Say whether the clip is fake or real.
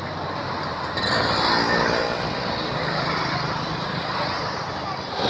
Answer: real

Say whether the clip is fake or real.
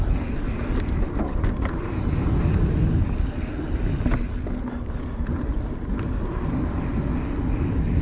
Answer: real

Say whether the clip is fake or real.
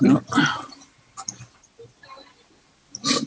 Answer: real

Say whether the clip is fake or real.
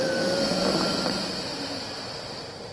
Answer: real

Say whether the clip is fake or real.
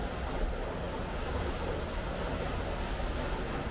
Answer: real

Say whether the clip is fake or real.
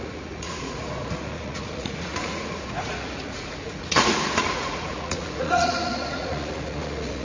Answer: fake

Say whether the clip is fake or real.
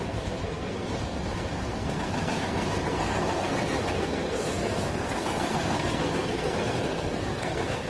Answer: fake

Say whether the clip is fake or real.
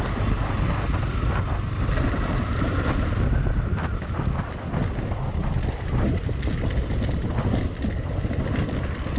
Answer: real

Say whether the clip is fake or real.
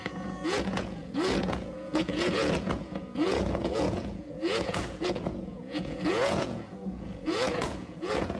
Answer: fake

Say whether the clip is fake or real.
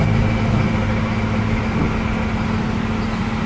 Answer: real